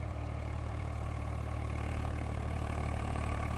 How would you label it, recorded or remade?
remade